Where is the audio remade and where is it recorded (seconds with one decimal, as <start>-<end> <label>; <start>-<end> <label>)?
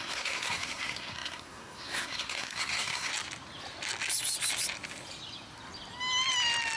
0.0-3.1 remade; 3.1-6.8 recorded